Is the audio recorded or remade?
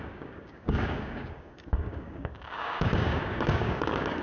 remade